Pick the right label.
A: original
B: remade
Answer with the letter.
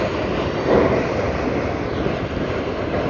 A